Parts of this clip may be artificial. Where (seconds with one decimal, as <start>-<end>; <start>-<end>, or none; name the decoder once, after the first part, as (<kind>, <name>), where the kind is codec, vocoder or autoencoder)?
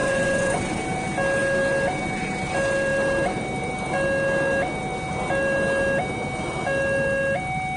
0.0-0.6 (vocoder, Vocos)